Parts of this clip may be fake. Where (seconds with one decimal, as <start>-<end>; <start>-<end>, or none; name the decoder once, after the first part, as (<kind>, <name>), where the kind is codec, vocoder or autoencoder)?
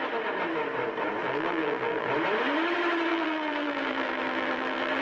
1.2-2.1 (vocoder, BigVGAN v2); 3.1-5.0